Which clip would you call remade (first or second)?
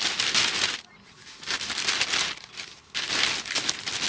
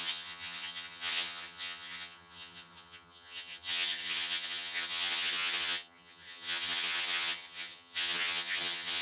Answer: second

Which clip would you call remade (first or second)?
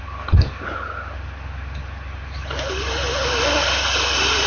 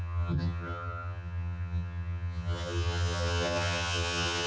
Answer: second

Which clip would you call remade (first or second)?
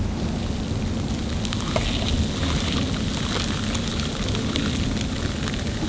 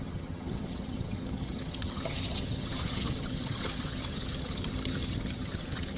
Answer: second